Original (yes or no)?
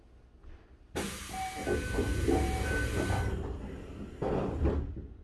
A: yes